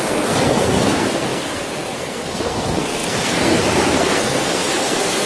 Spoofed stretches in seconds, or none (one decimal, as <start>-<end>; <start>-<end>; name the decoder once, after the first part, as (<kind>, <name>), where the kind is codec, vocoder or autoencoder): 0.0-5.3 (codec, SNAC)